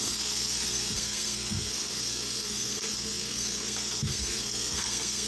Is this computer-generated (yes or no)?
yes